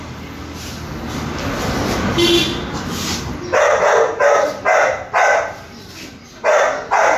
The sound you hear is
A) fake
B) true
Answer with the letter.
B